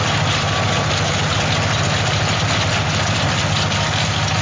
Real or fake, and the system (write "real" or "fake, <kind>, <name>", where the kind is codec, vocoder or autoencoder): real